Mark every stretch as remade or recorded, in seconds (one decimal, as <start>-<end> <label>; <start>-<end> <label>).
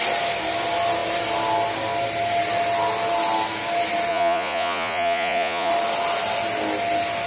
0.0-4.1 recorded; 4.1-5.7 remade; 5.7-7.3 recorded